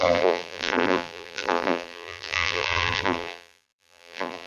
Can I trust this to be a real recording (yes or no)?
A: no